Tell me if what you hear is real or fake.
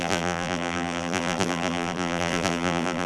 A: fake